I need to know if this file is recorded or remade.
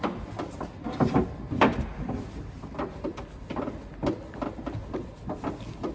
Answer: recorded